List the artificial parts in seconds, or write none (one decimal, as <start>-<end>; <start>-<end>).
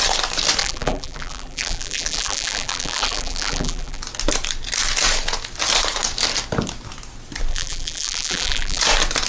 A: 0.6-4.0; 7.5-8.8